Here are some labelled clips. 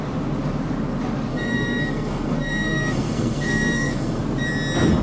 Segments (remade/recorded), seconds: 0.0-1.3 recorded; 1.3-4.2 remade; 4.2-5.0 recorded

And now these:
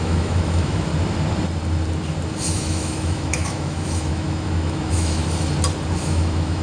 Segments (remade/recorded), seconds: 0.0-0.9 remade; 0.9-2.5 recorded; 2.5-5.2 remade; 5.2-6.0 recorded; 6.0-6.6 remade

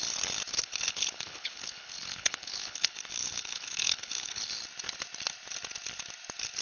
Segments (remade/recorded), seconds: 0.0-0.5 recorded; 0.5-4.5 remade; 4.5-6.6 recorded

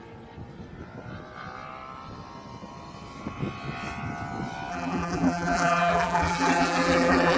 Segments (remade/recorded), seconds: 0.0-4.7 recorded; 4.7-7.4 remade

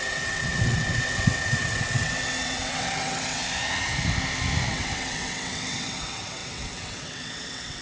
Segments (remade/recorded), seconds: 0.0-3.4 remade; 3.4-4.7 recorded; 4.7-7.8 remade

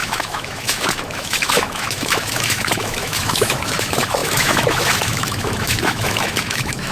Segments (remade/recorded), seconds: 0.0-6.9 remade

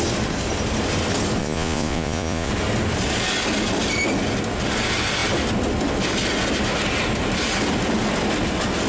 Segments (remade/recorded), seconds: 0.0-1.4 recorded; 1.4-2.5 remade; 2.5-8.9 recorded

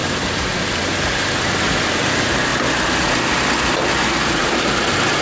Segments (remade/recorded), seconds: 0.0-1.6 remade; 1.6-5.2 recorded